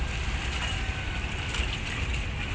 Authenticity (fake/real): real